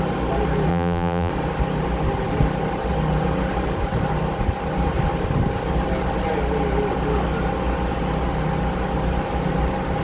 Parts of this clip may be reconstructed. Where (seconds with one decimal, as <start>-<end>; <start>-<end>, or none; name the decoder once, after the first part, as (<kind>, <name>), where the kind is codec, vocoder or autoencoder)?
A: 0.7-1.3 (vocoder, BigVGAN v2)